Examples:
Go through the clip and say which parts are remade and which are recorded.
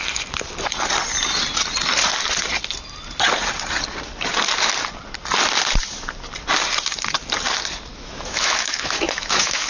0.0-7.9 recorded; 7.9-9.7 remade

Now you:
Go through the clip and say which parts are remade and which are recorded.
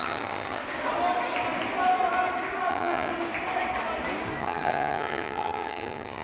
0.0-0.6 remade; 0.6-2.7 recorded; 2.7-3.1 remade; 3.1-4.4 recorded; 4.4-6.2 remade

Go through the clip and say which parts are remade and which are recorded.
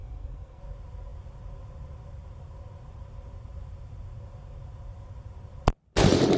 0.0-0.6 remade; 0.6-6.4 recorded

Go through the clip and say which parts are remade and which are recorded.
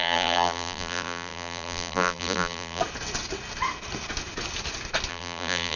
0.0-2.8 remade; 2.8-5.1 recorded; 5.1-5.8 remade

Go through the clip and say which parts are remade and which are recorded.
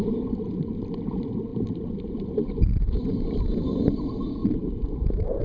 0.0-1.5 recorded; 1.5-3.9 remade; 3.9-4.4 recorded; 4.4-4.9 remade; 4.9-5.4 recorded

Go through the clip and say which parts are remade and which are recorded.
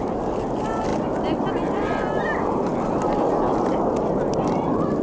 0.0-5.0 recorded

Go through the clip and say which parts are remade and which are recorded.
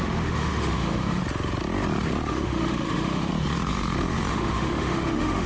0.0-1.2 remade; 1.2-2.3 recorded; 2.3-3.3 remade; 3.3-4.3 recorded; 4.3-5.5 remade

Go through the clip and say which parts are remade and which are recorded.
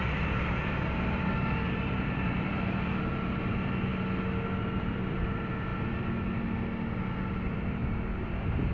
0.0-3.9 remade; 3.9-4.8 recorded; 4.8-5.7 remade; 5.7-7.3 recorded; 7.3-7.8 remade; 7.8-8.7 recorded